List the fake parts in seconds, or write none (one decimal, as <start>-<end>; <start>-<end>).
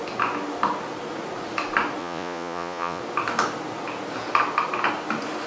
2.0-3.0